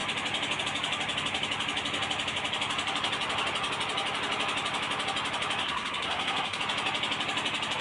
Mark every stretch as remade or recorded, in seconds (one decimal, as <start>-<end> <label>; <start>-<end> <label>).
0.0-5.6 recorded; 5.6-6.6 remade; 6.6-7.8 recorded